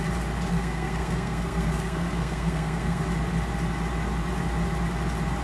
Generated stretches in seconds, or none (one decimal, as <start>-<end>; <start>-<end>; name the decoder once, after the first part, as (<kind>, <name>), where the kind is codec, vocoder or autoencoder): 0.5-3.0 (codec, SNAC)